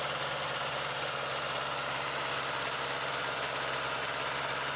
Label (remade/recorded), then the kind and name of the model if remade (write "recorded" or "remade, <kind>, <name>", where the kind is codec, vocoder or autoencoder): recorded